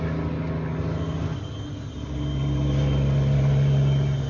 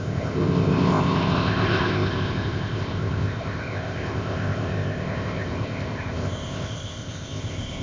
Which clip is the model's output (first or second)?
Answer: second